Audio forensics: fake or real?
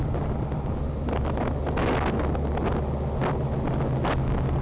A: real